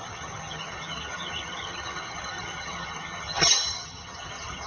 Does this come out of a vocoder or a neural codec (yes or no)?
yes